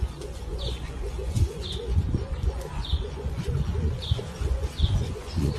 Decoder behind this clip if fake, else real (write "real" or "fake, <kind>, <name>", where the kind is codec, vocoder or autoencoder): fake, vocoder, Vocos